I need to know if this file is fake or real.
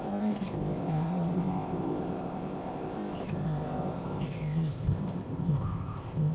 fake